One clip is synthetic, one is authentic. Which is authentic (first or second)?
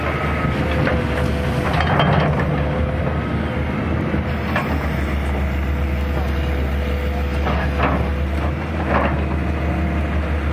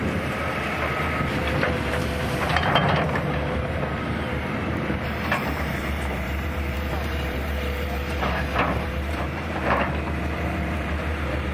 first